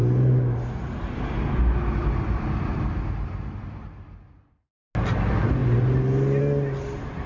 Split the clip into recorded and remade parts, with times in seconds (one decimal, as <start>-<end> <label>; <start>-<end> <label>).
0.0-2.0 recorded; 2.0-2.6 remade; 2.6-7.3 recorded